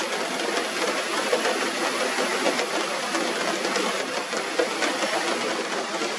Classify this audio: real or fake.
real